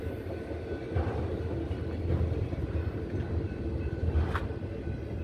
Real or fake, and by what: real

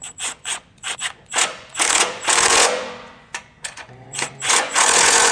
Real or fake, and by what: fake, vocoder, Vocos